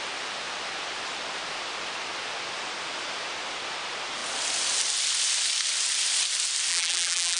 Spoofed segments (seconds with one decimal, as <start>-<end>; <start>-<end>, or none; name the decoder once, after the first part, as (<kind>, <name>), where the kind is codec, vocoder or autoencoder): 6.7-7.4 (vocoder, BigVGAN v2)